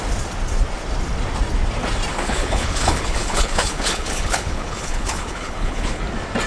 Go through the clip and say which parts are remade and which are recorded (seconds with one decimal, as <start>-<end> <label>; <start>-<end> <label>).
0.0-2.1 recorded; 2.1-6.0 remade; 6.0-6.5 recorded